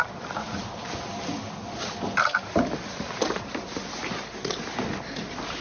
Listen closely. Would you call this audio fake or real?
real